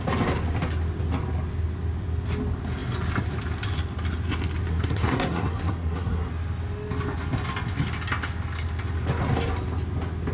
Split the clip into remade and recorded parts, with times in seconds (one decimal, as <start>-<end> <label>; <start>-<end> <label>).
0.0-4.7 recorded; 4.7-6.3 remade; 6.3-10.3 recorded